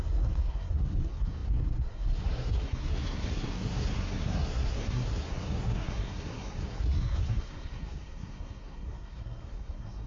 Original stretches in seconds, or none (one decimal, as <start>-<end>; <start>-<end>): none